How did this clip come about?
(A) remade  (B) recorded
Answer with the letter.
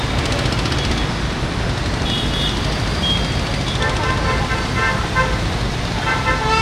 B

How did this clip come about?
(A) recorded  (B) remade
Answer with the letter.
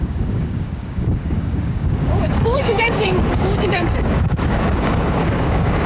B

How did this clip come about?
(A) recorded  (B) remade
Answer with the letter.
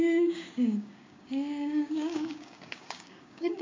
B